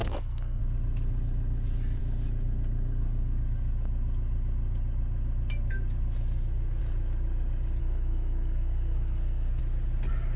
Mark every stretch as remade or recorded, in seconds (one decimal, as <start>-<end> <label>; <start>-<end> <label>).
0.0-0.6 remade; 0.6-7.8 recorded; 7.8-9.6 remade; 9.6-10.4 recorded